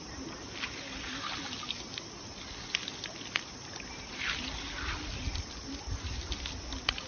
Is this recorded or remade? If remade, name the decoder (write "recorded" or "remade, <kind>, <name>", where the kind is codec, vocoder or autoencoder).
recorded